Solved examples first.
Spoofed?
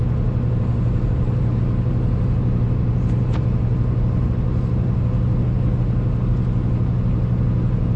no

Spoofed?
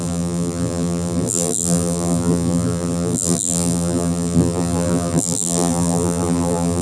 yes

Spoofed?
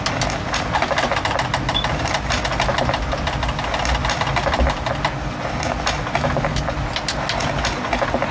no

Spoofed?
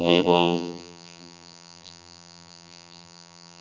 yes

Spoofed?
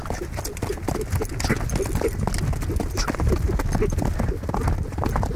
no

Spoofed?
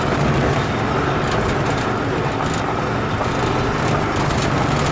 no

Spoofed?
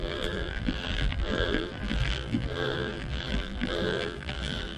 yes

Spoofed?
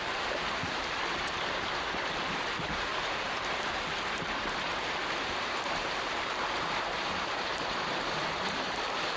yes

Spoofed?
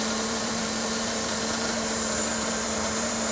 yes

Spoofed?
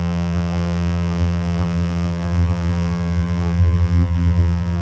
yes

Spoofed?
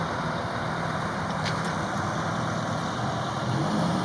yes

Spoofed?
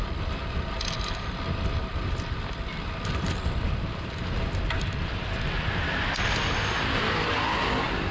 no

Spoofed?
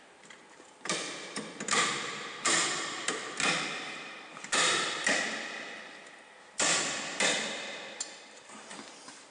yes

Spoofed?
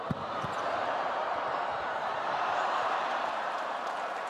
yes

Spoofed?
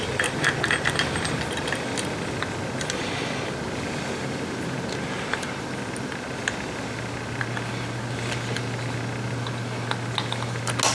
no